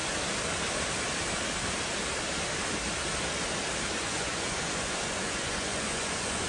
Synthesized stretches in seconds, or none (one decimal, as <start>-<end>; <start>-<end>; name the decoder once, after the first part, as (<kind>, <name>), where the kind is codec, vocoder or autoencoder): 4.0-6.5 (vocoder, Vocos)